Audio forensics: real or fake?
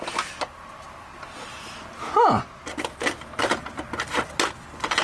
real